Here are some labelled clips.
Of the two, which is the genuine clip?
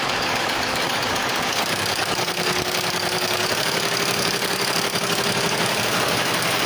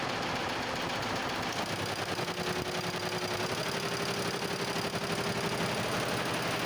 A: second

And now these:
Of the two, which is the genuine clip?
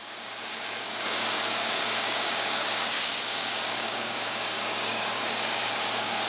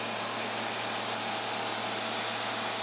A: second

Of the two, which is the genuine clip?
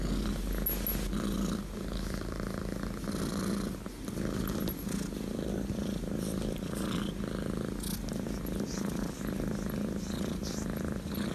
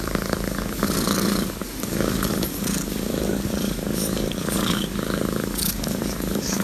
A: first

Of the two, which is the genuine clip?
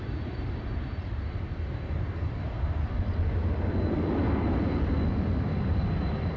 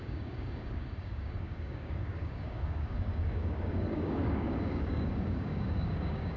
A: first